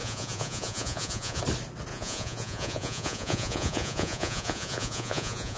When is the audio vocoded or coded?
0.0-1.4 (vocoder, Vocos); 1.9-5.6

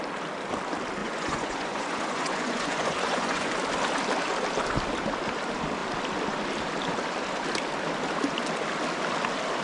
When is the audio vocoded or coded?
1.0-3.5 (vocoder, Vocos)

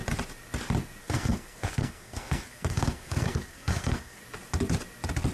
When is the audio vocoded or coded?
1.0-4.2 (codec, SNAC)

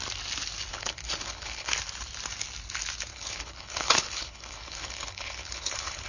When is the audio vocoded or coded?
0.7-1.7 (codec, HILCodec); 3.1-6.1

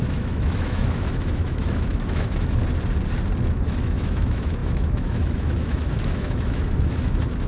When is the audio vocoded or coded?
0.0-2.6 (autoencoder, DAC-VAE); 3.5-7.5

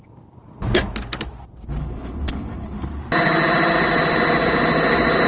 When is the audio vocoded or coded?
1.8-3.0 (codec, HILCodec)